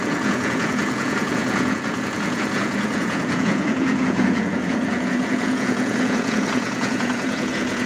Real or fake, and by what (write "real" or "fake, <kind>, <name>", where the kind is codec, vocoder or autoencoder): fake, vocoder, Vocos